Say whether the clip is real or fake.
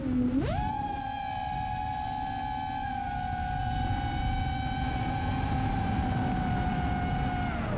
real